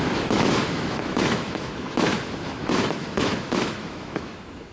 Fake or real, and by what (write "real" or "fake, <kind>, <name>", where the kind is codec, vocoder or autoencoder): fake, autoencoder, DAC-VAE